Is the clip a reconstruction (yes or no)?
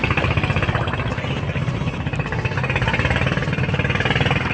no